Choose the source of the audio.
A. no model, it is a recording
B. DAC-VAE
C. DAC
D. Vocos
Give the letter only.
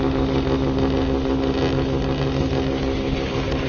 A